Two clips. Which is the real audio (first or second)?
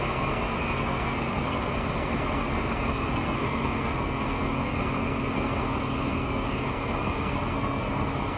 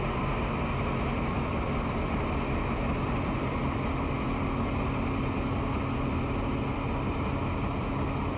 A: second